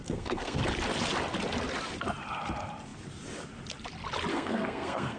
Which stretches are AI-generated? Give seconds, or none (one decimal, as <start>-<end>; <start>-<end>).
0.0-0.6; 4.3-5.2